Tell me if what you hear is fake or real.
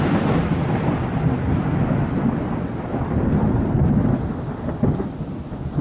real